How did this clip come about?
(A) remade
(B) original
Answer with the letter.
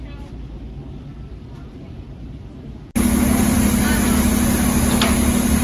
B